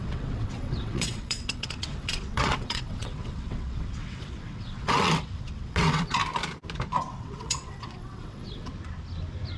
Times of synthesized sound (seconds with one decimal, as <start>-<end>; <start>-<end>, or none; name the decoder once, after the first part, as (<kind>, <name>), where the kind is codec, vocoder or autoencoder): 0.0-6.2 (vocoder, WaveNeXt); 7.0-8.7